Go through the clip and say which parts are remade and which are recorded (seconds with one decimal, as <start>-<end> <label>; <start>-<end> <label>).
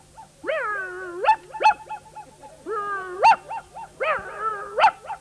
0.0-5.2 recorded